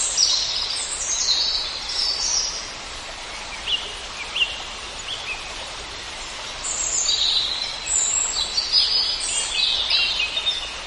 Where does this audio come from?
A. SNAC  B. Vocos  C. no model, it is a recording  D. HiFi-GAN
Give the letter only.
C